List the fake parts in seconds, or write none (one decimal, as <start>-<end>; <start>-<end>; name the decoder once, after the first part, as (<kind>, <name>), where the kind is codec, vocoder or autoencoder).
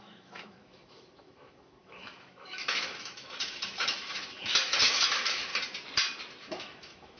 0.0-5.5 (autoencoder, DAC-VAE); 6.4-7.2